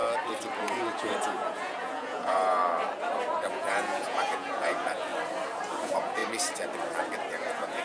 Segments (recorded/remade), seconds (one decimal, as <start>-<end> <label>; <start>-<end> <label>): 0.0-0.6 recorded; 0.6-2.6 remade; 2.6-3.5 recorded; 3.5-5.1 remade; 5.1-5.8 recorded; 5.8-6.2 remade; 6.2-7.3 recorded; 7.3-7.8 remade